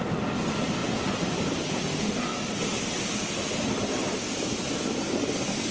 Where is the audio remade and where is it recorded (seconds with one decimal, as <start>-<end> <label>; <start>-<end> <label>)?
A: 0.0-0.8 recorded; 0.8-1.5 remade; 1.5-2.3 recorded; 2.3-4.7 remade; 4.7-5.7 recorded